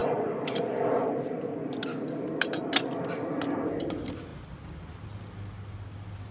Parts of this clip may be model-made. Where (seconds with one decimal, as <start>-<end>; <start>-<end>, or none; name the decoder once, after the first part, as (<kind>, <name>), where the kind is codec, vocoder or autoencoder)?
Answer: none